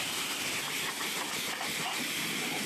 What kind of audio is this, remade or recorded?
recorded